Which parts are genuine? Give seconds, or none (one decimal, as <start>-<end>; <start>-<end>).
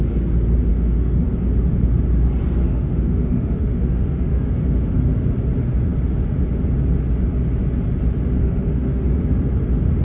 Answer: 0.0-0.7; 1.2-2.6; 5.0-8.4; 9.2-10.0